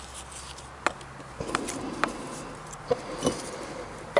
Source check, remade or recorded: recorded